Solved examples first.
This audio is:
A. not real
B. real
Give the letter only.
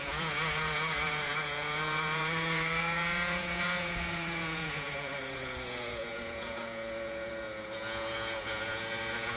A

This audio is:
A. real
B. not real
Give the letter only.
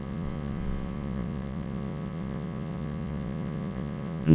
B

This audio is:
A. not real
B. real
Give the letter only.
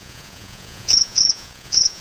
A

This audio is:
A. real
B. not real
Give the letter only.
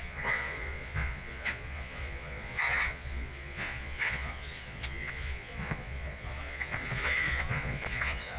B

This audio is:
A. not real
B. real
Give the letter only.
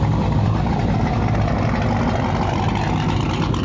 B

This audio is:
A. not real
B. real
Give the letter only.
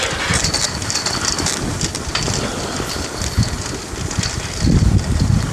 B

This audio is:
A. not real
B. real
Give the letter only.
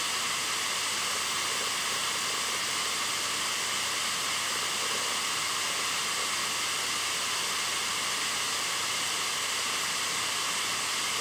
B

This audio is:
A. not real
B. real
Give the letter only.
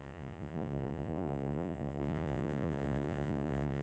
A